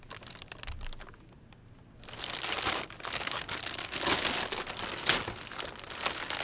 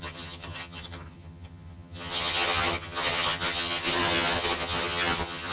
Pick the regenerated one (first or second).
second